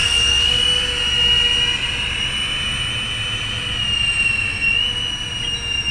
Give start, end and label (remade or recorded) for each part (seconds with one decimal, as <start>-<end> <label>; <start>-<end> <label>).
0.0-0.6 remade; 0.6-5.9 recorded